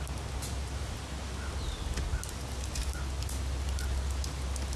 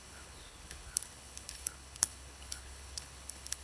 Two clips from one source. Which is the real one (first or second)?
first